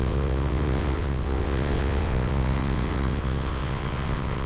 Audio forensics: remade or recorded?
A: remade